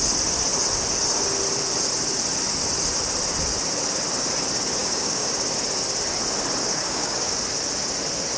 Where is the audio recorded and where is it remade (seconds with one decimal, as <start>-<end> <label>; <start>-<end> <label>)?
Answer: 0.0-4.8 recorded; 4.8-5.3 remade; 5.3-6.7 recorded; 6.7-7.3 remade; 7.3-8.4 recorded